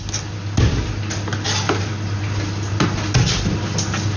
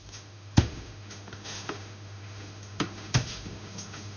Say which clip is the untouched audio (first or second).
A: first